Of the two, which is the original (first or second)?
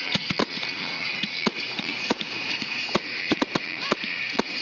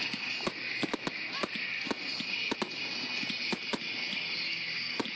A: second